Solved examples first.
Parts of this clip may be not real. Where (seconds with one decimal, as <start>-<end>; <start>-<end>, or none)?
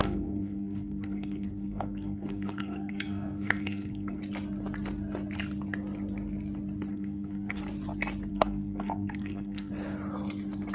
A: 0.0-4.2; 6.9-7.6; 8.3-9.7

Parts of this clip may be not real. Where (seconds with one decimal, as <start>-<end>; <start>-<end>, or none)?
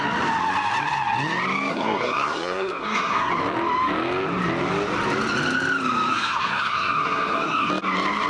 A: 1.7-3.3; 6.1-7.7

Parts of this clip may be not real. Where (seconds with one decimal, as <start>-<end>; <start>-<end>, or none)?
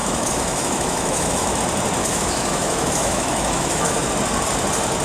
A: 0.0-1.6; 2.0-4.1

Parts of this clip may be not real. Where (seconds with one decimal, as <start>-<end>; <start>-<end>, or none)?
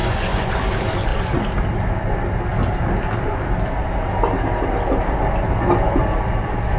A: 0.0-0.5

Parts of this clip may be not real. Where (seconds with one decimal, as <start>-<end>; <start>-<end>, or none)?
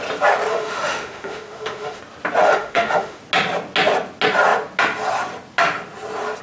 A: 0.5-2.0; 2.4-3.2